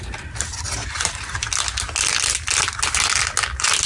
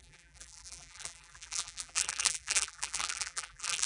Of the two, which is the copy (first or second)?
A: second